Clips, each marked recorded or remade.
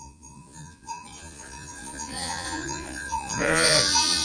remade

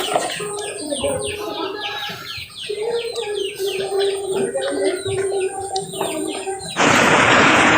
remade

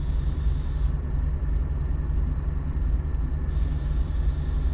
recorded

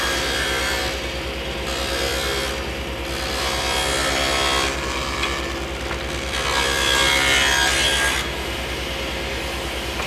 recorded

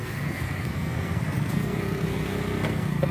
remade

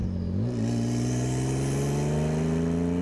recorded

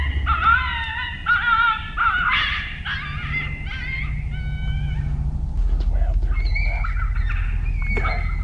recorded